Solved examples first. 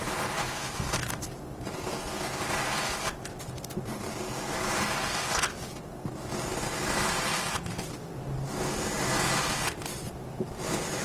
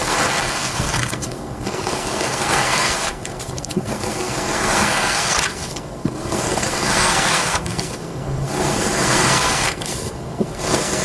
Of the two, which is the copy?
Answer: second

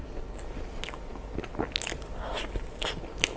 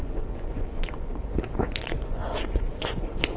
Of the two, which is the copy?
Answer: second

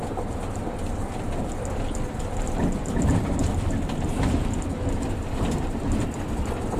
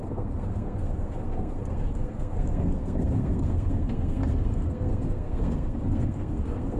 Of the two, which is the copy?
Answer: second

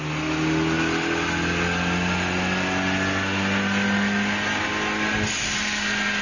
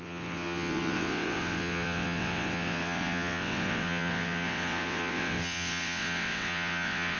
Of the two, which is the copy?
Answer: second